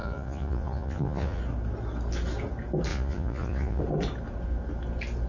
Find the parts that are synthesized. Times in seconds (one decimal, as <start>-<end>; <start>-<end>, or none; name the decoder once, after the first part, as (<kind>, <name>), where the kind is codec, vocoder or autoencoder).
0.0-1.4 (vocoder, Vocos); 2.9-3.8